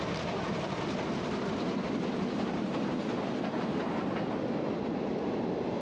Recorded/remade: recorded